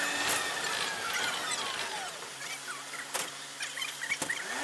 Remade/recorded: recorded